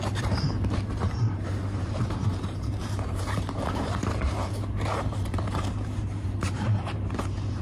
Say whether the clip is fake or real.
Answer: fake